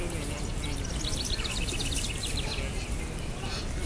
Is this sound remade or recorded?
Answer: recorded